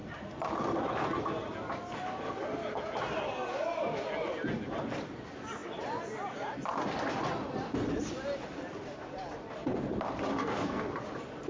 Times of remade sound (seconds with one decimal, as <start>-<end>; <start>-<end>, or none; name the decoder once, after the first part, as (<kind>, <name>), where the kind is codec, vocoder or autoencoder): 10.4-10.9 (codec, SNAC)